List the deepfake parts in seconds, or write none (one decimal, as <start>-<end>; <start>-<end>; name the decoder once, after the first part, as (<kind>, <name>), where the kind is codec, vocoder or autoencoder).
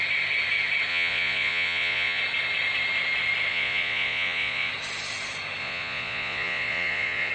0.9-2.2 (vocoder, Vocos); 3.5-4.7; 5.6-7.3